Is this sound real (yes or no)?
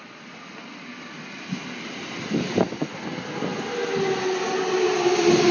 yes